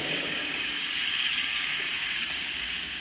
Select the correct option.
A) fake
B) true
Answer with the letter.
A